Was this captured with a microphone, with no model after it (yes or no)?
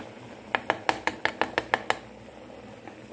yes